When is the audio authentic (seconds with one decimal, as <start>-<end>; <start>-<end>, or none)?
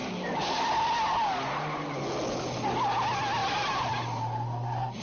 0.8-3.4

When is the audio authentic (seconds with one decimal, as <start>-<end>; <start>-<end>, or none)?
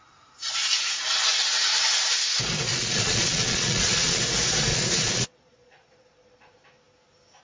0.0-2.7; 4.2-4.7; 6.5-7.4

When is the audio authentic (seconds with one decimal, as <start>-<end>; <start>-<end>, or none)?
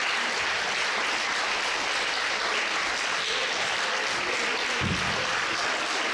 0.0-3.2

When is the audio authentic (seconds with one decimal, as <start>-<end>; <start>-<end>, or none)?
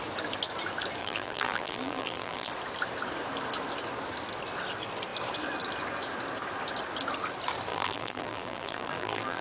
0.0-1.0; 2.5-7.7